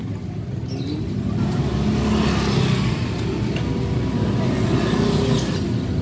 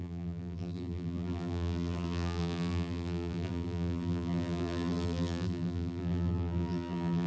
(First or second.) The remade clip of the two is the second